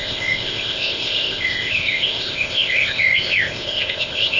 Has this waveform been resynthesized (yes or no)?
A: yes